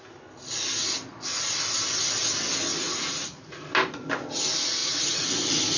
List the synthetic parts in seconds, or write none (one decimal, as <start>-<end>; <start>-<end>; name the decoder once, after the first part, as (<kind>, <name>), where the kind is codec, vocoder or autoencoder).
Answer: 2.8-3.7 (vocoder, Vocos); 4.8-5.3